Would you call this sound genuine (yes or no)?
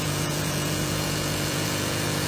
no